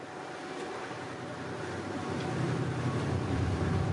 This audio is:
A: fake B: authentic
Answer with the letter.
A